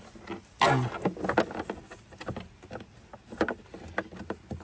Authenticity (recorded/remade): recorded